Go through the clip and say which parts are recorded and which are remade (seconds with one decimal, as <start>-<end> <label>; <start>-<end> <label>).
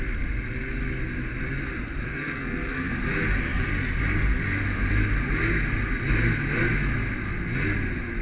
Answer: 0.0-2.1 recorded; 2.1-2.9 remade; 2.9-8.2 recorded